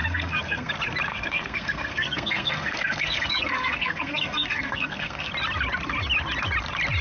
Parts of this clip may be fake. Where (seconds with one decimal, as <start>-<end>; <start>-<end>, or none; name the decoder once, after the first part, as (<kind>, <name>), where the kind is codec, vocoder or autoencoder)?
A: 0.0-0.7 (codec, SNAC); 1.1-5.3